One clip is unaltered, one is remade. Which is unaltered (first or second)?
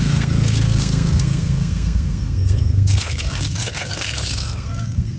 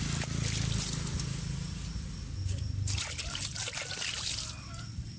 second